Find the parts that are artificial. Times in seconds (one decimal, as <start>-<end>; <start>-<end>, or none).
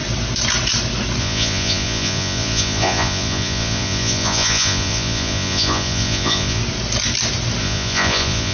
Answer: 1.2-6.6; 7.6-8.5